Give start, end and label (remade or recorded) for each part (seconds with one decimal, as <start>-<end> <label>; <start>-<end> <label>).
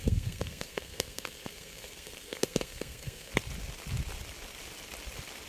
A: 0.0-3.3 remade; 3.3-5.5 recorded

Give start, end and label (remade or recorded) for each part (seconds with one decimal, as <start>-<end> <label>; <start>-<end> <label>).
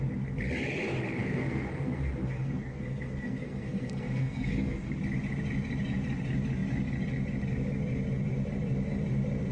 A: 0.0-1.2 recorded; 1.2-5.0 remade; 5.0-9.5 recorded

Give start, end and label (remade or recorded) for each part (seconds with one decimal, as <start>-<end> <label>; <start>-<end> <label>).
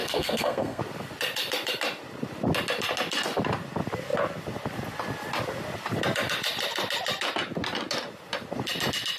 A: 0.0-0.8 remade; 0.8-9.2 recorded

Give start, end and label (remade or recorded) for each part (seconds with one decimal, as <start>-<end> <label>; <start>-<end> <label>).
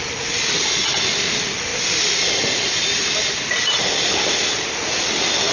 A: 0.0-5.5 recorded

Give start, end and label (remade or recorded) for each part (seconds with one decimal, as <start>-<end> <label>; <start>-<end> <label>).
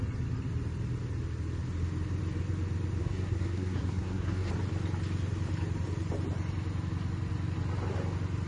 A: 0.0-3.0 recorded; 3.0-4.5 remade; 4.5-8.5 recorded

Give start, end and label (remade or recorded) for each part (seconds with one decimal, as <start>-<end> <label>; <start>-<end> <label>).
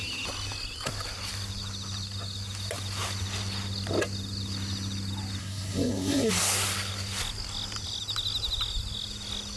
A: 0.0-5.4 recorded; 5.4-6.3 remade; 6.3-9.6 recorded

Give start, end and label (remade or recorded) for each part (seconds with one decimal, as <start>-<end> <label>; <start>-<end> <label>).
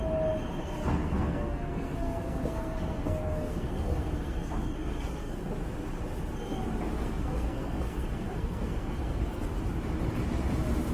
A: 0.0-0.6 recorded; 0.6-5.5 remade; 5.5-7.0 recorded; 7.0-9.5 remade; 9.5-10.9 recorded